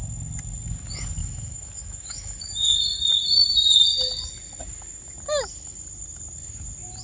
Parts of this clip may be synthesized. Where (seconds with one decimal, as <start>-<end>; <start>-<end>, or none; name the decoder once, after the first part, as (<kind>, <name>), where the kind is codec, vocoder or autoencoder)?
1.2-3.0 (autoencoder, DAC-VAE)